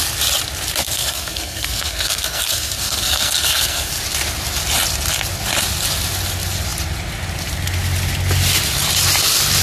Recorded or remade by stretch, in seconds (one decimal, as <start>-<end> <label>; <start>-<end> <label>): 0.0-0.8 recorded; 0.8-4.0 remade; 4.0-9.6 recorded